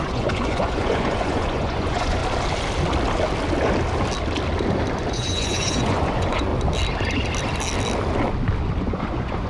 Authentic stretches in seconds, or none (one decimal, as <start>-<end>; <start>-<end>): 2.2-5.1; 6.5-8.8